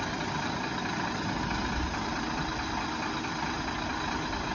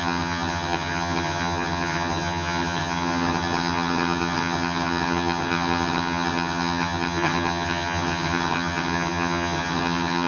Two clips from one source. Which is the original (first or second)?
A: first